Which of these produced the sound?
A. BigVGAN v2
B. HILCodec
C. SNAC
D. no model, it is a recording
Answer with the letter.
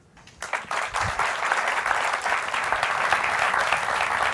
D